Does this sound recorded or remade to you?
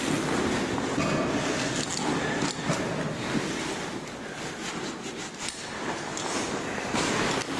recorded